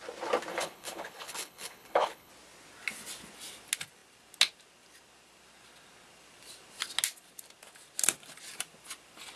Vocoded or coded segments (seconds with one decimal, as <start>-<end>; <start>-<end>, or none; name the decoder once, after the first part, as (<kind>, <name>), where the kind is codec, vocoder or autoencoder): 0.5-2.3 (codec, HILCodec)